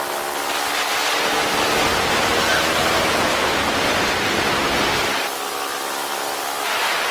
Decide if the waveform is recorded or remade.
recorded